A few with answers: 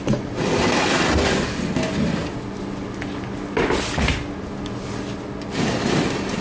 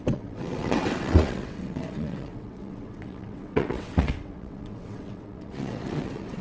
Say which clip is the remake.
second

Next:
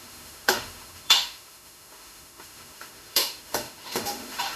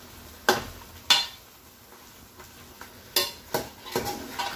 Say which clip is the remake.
first